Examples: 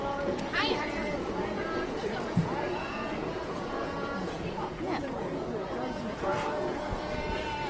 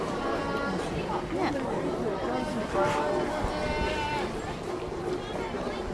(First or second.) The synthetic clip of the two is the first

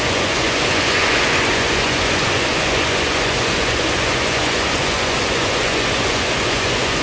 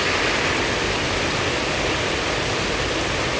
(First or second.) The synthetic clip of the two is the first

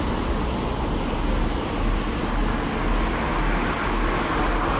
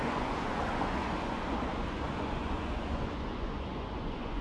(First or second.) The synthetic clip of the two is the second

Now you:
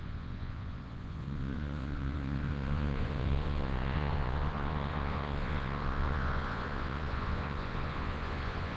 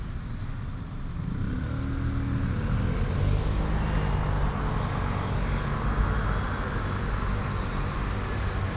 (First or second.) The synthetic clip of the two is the first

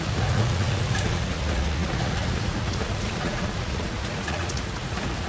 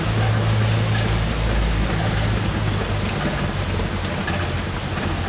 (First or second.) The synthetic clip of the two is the first